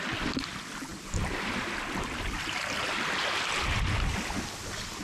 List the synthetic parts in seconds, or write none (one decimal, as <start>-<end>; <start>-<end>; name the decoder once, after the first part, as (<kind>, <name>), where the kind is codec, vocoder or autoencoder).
none